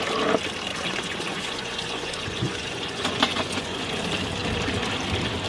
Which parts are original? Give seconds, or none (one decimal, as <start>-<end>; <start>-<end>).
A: 0.0-0.7; 4.0-5.5